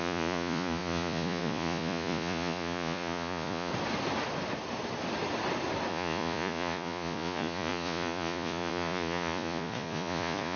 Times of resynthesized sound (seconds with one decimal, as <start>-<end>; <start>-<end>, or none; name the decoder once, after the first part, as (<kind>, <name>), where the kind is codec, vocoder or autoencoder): 0.0-3.7 (vocoder, Vocos); 5.9-10.6